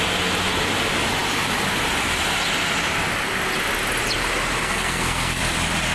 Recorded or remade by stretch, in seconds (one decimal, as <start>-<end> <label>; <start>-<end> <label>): 0.0-4.6 recorded; 4.6-5.4 remade; 5.4-5.9 recorded